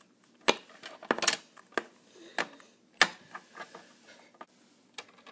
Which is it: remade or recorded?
recorded